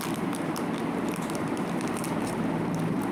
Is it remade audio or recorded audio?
recorded